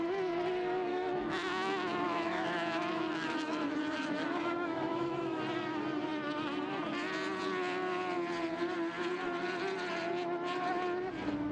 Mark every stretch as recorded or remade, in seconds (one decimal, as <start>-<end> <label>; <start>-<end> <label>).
0.0-0.9 recorded; 0.9-5.4 remade; 5.4-11.5 recorded